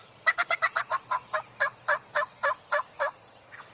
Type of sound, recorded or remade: remade